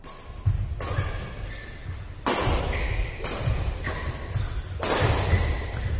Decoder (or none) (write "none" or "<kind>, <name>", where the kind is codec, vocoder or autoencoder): none